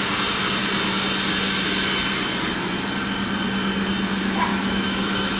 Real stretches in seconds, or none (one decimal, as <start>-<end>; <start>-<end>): 0.0-4.5